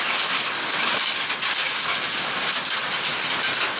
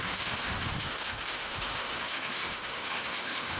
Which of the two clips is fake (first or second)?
second